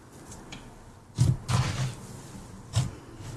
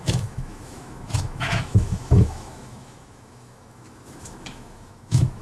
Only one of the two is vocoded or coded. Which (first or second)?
second